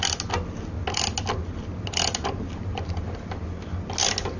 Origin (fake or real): real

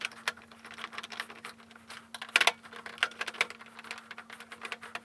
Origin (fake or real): real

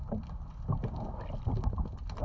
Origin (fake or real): real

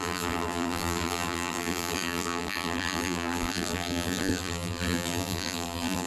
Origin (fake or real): fake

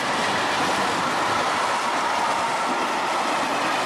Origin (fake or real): real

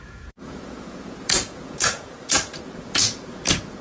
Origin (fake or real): fake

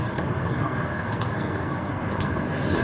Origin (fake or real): fake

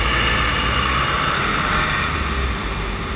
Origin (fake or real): real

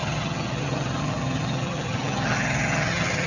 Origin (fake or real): fake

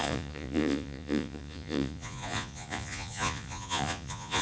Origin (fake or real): fake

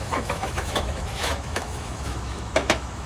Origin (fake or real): fake